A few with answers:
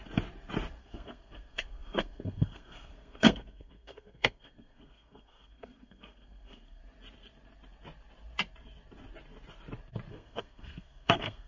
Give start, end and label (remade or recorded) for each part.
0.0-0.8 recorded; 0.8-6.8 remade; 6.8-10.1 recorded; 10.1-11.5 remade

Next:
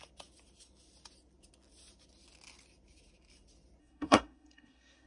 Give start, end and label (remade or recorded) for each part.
0.0-3.8 recorded; 3.8-5.1 remade

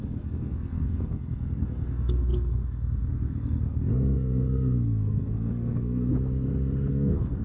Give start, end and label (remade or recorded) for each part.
0.0-6.1 remade; 6.1-6.9 recorded; 6.9-7.4 remade